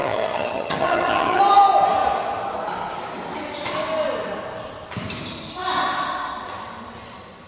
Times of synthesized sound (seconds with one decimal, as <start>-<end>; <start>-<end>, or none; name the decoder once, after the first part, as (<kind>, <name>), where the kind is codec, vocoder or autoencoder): 0.0-1.4 (vocoder, HiFi-GAN)